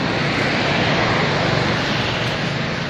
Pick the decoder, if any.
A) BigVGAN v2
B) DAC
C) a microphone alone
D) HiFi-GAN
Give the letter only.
C